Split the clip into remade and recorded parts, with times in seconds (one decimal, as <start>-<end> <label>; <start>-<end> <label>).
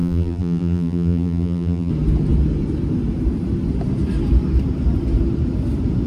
0.0-1.9 remade; 1.9-6.1 recorded